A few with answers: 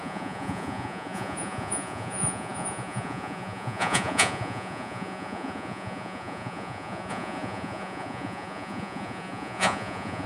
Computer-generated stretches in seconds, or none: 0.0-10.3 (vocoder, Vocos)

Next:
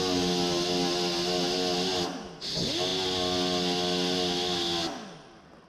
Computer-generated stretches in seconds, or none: none

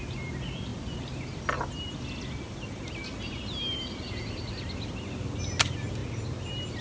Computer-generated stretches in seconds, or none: none

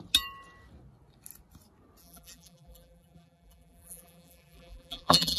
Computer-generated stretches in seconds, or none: 2.0-5.4 (vocoder, BigVGAN v2)